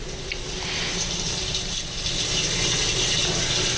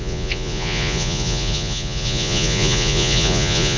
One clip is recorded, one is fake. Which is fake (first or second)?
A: second